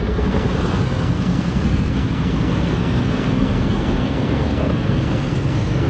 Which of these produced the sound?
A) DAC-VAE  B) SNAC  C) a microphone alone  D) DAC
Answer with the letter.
B